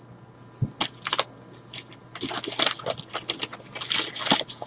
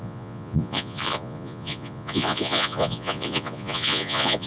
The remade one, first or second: second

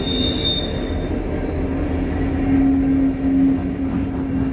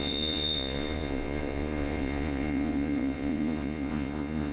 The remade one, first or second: second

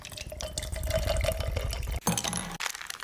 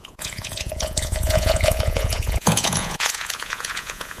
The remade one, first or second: second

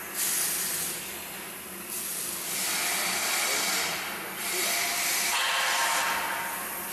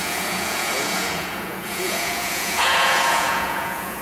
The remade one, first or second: second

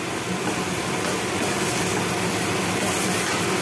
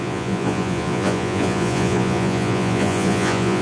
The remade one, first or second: second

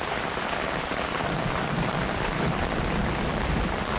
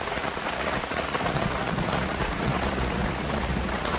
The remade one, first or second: second